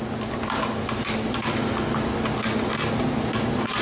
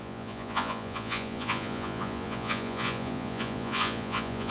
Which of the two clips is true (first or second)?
first